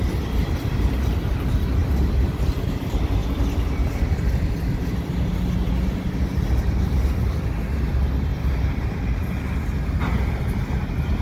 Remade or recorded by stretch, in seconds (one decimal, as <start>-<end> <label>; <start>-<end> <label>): 0.0-11.2 recorded